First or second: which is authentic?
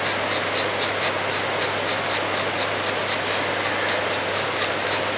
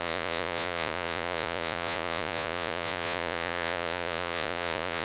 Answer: first